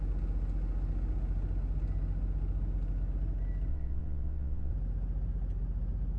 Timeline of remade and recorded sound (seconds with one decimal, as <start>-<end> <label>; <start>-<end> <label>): 0.0-3.7 recorded; 3.7-4.7 remade; 4.7-6.2 recorded